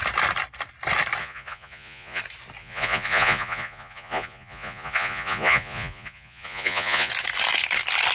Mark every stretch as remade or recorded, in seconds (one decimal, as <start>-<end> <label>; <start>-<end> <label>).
0.0-1.2 recorded; 1.2-2.2 remade; 2.2-2.6 recorded; 2.6-7.1 remade; 7.1-8.1 recorded